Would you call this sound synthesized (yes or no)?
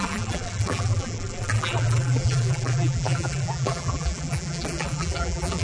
yes